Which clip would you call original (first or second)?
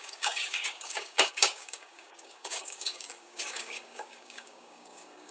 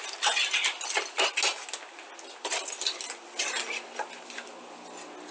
second